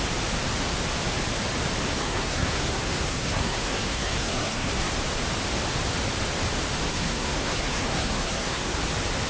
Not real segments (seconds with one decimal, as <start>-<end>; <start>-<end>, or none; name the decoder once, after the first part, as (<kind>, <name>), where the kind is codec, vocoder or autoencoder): 2.0-4.9 (codec, SNAC); 6.9-8.8